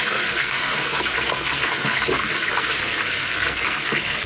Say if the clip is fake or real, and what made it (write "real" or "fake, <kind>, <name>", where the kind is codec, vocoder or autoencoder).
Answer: fake, codec, SNAC